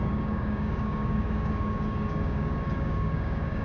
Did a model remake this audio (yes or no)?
yes